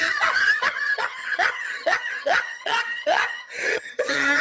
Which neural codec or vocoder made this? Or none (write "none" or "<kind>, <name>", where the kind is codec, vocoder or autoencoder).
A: vocoder, HiFi-GAN